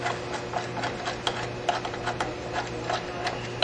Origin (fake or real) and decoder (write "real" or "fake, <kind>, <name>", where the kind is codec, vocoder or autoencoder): real